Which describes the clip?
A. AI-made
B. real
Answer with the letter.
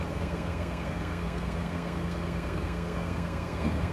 A